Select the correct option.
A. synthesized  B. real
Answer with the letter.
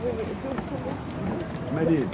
B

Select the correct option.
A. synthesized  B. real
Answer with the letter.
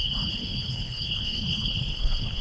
A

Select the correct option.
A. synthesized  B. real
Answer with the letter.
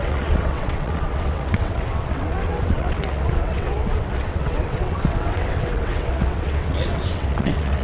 A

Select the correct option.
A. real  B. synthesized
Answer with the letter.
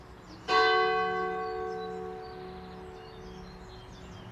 A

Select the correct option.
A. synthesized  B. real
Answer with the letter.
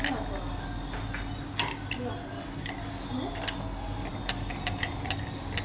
B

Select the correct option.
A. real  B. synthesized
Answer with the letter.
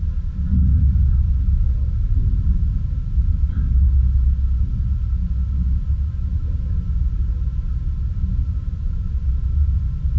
A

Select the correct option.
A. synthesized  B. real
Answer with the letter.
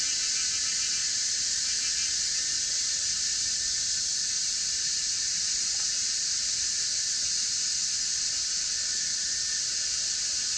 B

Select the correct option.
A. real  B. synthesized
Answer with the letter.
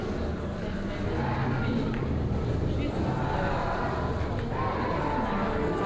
A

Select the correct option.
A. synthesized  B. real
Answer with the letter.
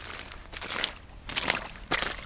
B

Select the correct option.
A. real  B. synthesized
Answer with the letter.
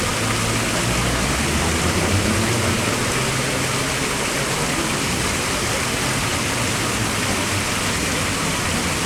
A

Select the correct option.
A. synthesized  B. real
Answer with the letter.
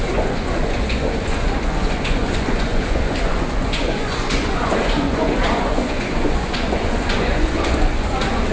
A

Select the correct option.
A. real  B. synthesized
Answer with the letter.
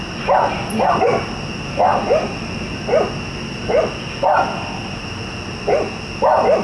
A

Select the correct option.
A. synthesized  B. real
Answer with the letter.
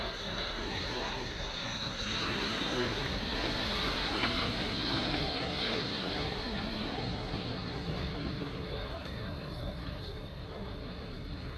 A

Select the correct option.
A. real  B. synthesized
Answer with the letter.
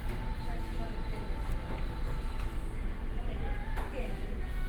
A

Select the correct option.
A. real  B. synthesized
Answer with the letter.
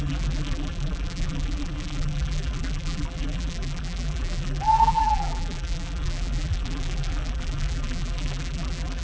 B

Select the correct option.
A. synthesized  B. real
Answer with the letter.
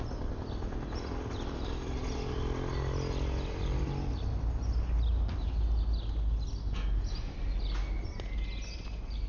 B